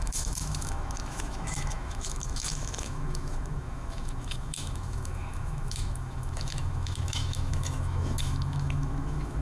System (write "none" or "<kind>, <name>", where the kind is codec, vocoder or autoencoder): autoencoder, DAC-VAE